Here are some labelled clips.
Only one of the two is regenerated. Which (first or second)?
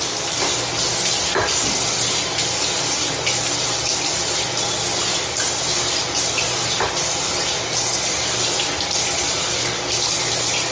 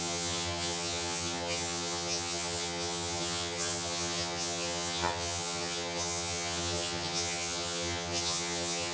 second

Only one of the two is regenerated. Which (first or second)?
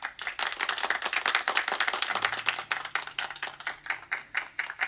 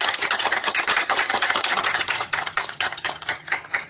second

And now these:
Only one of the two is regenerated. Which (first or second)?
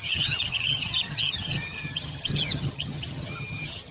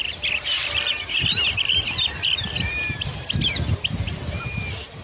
first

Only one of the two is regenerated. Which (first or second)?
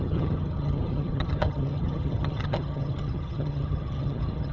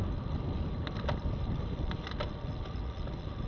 first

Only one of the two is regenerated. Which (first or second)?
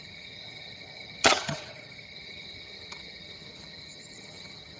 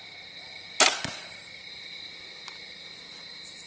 first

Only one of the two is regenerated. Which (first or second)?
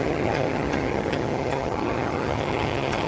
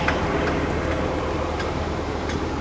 first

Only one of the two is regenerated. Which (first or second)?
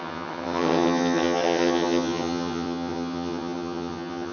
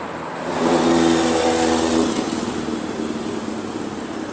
first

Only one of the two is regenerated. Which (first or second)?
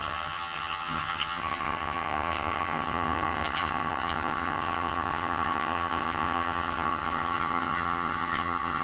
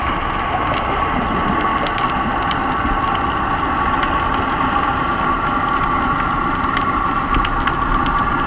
first